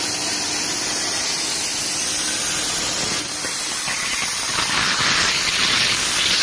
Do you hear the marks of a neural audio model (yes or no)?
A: no